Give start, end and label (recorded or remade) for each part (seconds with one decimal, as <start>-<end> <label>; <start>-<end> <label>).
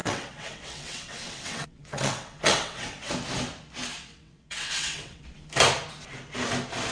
0.0-3.1 remade; 3.1-4.1 recorded; 4.1-5.2 remade; 5.2-6.9 recorded